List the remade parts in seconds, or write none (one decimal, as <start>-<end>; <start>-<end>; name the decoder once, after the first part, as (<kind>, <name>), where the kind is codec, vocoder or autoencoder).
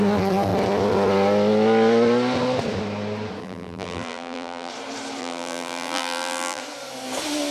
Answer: 3.4-4.7 (vocoder, BigVGAN v2); 5.2-6.6